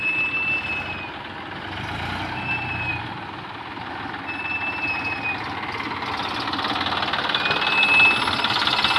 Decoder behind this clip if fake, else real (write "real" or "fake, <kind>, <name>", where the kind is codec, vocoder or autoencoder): real